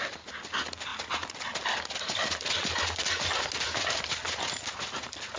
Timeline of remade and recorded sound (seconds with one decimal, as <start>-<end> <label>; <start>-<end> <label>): 0.0-5.4 recorded